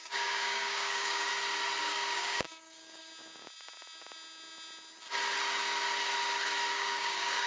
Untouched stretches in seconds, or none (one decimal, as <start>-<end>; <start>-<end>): 1.3-1.8; 3.1-6.7